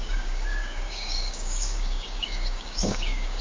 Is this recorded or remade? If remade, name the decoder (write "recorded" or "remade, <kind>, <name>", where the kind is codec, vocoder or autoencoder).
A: remade, codec, DAC